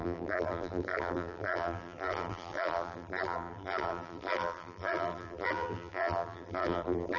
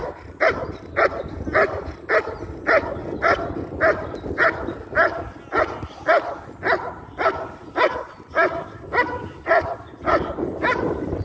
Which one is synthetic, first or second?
first